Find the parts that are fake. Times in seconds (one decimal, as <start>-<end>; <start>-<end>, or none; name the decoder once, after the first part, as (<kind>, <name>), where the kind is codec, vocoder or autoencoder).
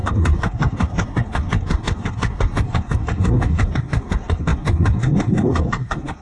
0.0-6.2 (codec, SNAC)